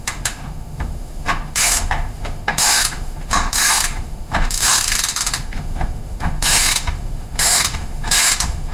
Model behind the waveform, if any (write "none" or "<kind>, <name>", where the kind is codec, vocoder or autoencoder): autoencoder, DAC-VAE